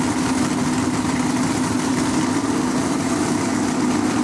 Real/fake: real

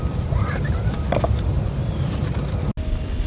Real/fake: real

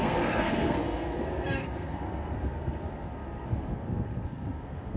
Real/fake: fake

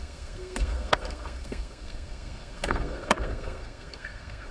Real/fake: fake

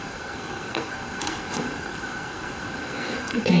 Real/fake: fake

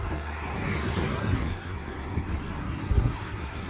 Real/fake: fake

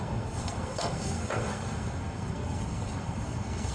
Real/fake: fake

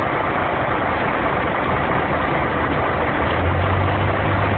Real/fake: real